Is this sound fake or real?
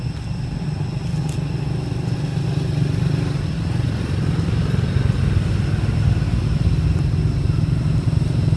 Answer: real